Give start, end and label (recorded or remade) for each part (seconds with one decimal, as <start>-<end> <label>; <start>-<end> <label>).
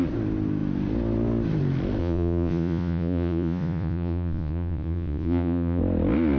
0.0-2.0 recorded; 2.0-5.8 remade; 5.8-6.4 recorded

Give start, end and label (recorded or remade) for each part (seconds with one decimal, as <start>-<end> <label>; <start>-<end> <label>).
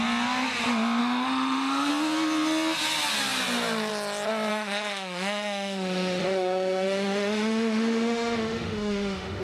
0.0-1.0 recorded; 1.0-1.9 remade; 1.9-4.5 recorded; 4.5-9.4 remade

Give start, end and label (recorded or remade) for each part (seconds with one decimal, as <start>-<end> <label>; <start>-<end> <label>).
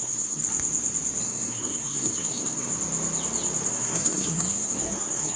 0.0-0.4 remade; 0.4-1.2 recorded; 1.2-2.7 remade; 2.7-3.7 recorded; 3.7-5.4 remade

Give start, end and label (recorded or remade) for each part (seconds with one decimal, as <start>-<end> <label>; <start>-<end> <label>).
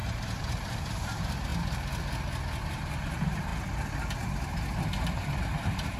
0.0-1.5 remade; 1.5-2.6 recorded; 2.6-3.5 remade; 3.5-4.8 recorded; 4.8-6.0 remade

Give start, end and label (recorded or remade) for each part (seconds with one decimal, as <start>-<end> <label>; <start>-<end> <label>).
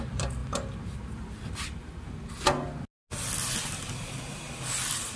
0.0-5.2 recorded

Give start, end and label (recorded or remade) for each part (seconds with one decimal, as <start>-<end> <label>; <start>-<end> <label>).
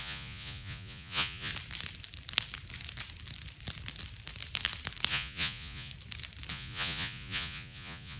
0.0-1.5 remade; 1.5-5.1 recorded; 5.1-5.9 remade; 5.9-6.5 recorded; 6.5-8.2 remade